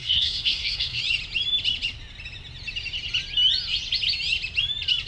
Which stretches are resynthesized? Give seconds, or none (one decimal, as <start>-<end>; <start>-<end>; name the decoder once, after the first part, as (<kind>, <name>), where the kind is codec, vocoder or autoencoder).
0.0-1.0 (codec, SNAC)